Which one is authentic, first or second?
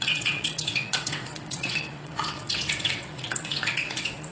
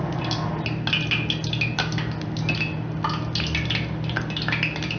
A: second